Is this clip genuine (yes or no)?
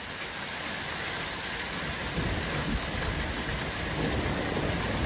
yes